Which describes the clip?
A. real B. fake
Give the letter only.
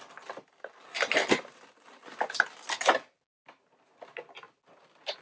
A